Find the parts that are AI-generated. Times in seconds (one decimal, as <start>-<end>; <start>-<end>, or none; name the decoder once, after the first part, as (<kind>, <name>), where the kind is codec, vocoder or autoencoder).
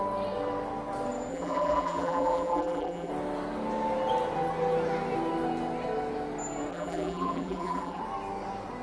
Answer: 1.3-3.1 (vocoder, BigVGAN v2); 6.7-8.0